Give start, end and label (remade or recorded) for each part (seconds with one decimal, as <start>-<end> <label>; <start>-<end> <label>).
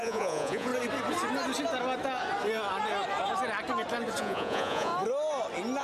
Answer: 0.0-0.7 remade; 0.7-4.2 recorded; 4.2-4.9 remade; 4.9-5.8 recorded